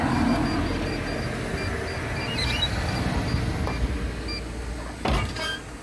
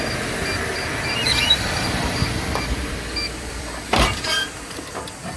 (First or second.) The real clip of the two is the first